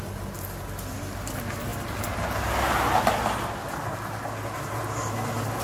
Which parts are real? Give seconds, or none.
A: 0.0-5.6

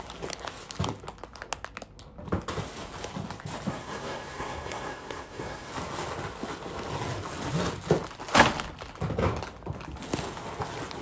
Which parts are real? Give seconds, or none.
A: 0.0-3.7; 5.7-11.0